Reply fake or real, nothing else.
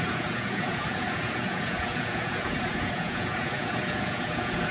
fake